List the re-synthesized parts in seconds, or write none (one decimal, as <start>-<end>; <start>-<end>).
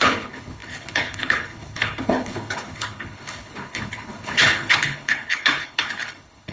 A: 0.0-6.5